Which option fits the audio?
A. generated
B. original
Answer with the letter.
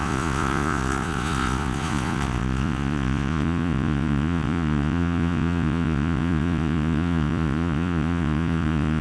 A